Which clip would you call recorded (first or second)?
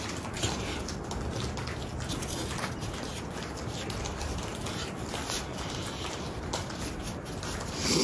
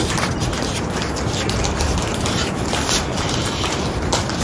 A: first